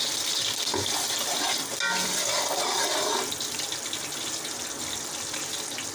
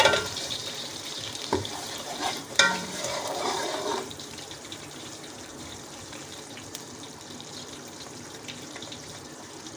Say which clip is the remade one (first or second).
second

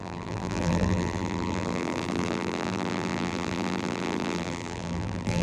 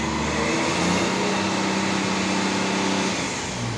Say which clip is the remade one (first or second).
first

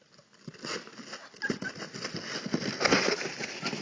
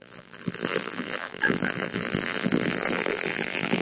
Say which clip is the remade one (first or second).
second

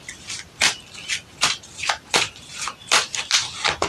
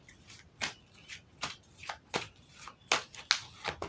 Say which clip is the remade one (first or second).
first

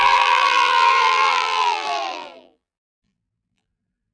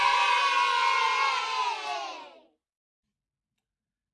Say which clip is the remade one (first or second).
first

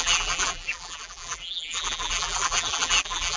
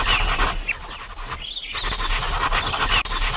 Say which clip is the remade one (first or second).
first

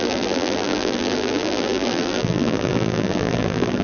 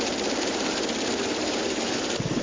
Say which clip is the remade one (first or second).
first